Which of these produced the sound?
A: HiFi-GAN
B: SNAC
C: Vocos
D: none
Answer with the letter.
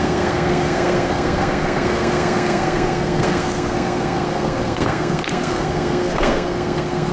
B